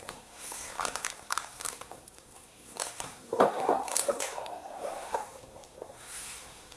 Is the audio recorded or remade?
remade